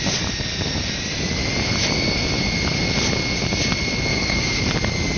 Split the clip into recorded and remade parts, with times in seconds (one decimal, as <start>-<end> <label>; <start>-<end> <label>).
0.0-4.1 recorded; 4.1-4.6 remade; 4.6-5.2 recorded